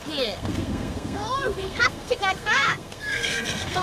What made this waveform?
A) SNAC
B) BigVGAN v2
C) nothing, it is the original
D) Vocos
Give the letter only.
A